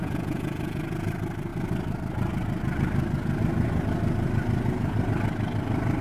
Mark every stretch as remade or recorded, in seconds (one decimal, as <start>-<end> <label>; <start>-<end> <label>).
0.0-1.1 remade; 1.1-6.0 recorded